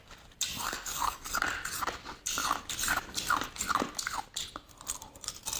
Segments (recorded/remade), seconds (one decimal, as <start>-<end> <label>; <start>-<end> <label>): 0.0-0.6 recorded; 0.6-1.3 remade; 1.3-5.6 recorded